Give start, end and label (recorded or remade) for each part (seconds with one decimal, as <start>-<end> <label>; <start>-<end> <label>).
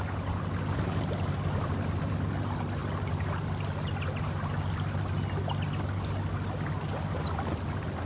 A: 0.0-8.1 recorded